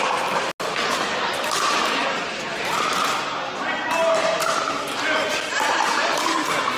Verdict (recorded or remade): recorded